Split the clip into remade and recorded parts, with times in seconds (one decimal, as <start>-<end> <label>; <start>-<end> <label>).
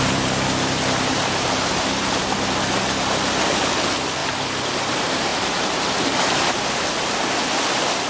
0.0-2.2 remade; 2.2-3.6 recorded; 3.6-5.3 remade; 5.3-8.1 recorded